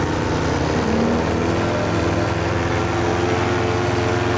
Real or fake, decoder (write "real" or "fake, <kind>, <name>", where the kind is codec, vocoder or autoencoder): real